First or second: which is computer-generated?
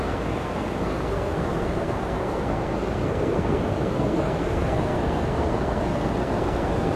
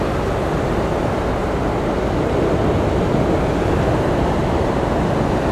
first